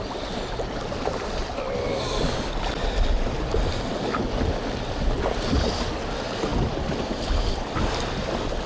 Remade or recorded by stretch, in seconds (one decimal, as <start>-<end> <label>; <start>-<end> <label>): 0.0-6.5 recorded; 6.5-8.7 remade